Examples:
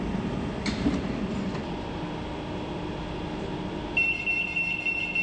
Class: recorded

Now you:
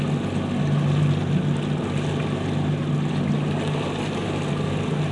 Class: recorded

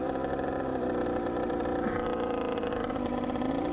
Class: remade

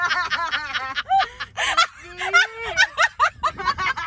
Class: recorded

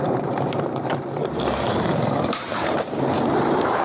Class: remade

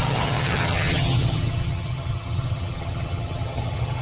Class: remade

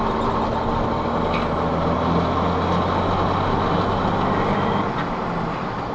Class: recorded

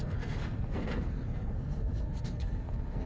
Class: remade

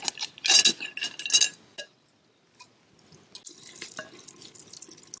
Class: recorded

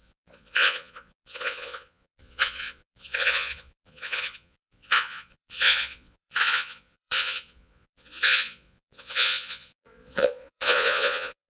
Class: remade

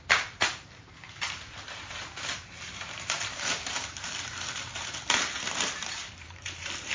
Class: remade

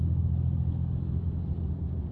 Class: recorded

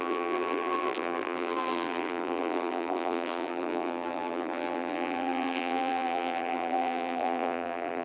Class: remade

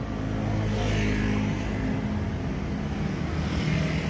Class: recorded